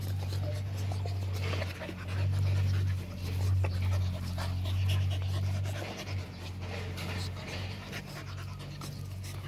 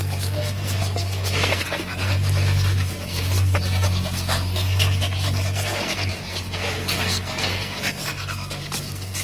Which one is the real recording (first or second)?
first